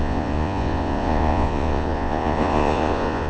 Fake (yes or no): yes